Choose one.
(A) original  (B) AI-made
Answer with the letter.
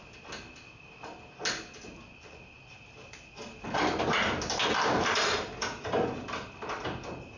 A